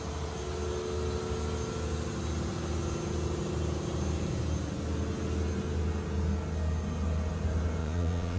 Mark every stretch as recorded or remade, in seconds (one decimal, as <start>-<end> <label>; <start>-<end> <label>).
0.0-7.8 recorded; 7.8-8.4 remade